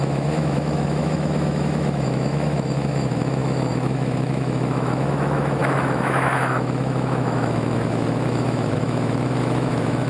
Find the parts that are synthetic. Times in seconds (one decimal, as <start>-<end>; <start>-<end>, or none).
0.0-10.1

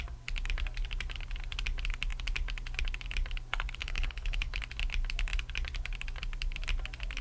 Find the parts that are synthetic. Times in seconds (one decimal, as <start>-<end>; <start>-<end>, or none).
3.8-4.6

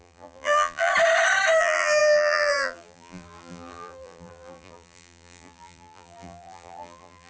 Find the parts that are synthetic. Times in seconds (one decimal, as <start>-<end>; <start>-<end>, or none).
0.0-0.9; 1.6-7.3